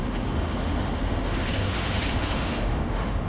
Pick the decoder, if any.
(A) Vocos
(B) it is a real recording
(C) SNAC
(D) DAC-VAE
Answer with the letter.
D